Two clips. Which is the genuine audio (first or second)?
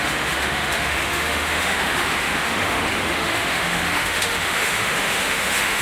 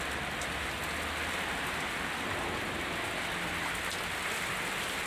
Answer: second